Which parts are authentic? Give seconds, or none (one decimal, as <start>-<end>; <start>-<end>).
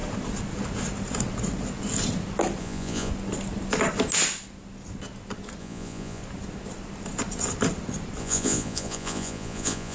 0.0-2.6; 3.1-5.6; 6.2-8.2